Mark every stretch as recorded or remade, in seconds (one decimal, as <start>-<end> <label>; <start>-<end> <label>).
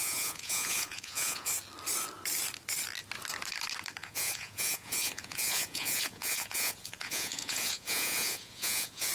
0.0-1.5 remade; 1.5-4.0 recorded; 4.0-9.1 remade